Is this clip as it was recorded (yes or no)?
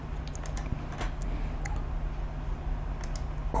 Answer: yes